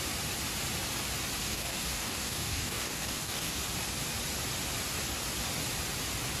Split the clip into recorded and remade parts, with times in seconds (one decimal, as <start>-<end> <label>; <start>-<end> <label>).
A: 0.0-1.4 recorded; 1.4-3.6 remade; 3.6-6.4 recorded